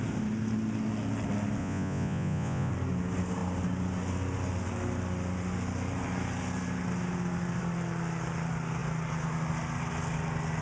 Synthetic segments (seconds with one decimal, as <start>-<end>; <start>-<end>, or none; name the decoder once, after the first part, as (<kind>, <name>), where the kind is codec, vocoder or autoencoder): 1.6-2.7 (vocoder, Vocos)